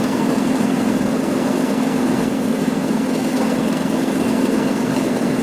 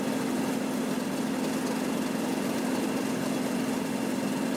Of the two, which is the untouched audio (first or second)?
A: second